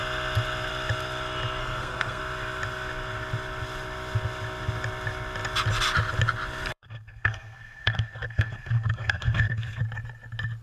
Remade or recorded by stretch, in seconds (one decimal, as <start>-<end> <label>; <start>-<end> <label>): 0.0-1.6 recorded; 1.6-2.2 remade; 2.2-6.7 recorded; 6.7-9.8 remade; 9.8-10.6 recorded